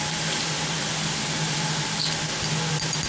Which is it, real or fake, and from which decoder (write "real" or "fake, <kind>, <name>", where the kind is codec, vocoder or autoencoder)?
real